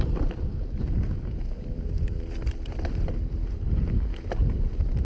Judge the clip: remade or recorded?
recorded